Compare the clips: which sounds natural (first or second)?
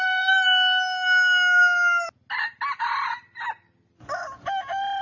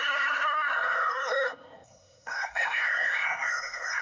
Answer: first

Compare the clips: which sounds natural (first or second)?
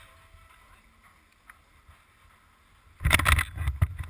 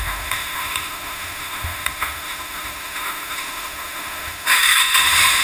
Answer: first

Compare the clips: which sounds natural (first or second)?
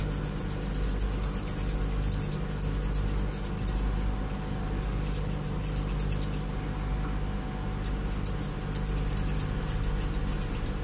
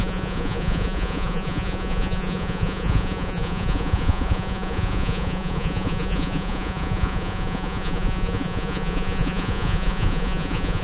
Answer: first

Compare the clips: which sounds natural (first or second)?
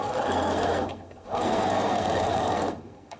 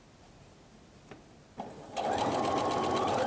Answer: second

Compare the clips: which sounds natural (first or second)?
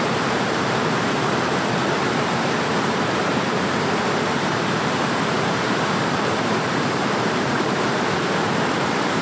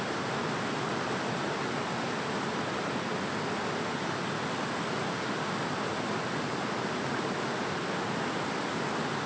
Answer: second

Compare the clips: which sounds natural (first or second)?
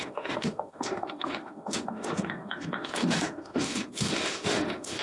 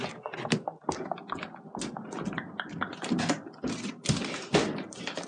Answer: second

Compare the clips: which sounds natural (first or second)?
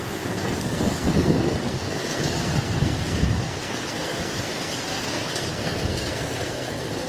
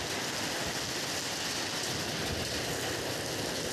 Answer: second